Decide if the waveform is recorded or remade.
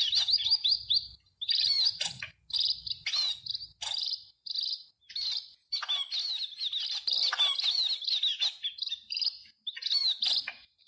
recorded